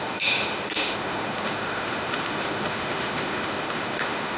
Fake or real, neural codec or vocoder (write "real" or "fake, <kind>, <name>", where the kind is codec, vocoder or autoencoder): fake, autoencoder, DAC-VAE